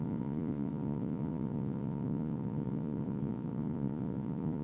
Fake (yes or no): yes